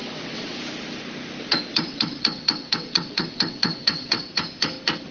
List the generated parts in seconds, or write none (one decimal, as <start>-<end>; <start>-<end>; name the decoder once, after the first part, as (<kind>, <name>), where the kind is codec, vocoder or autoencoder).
0.0-0.6 (vocoder, WaveNeXt); 1.4-4.3